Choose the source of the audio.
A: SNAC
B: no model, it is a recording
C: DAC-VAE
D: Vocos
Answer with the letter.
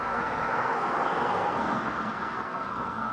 A